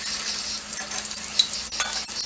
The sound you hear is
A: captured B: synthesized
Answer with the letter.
A